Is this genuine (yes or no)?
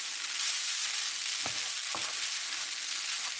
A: yes